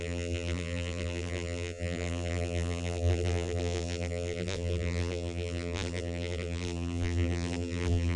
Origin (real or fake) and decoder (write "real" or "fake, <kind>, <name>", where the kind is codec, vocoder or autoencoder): fake, vocoder, BigVGAN v2